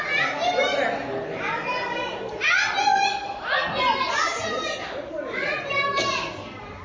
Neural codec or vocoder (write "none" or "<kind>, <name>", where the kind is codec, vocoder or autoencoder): none